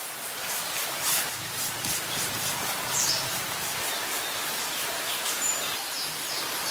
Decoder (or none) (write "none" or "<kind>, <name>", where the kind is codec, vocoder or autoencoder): vocoder, BigVGAN v2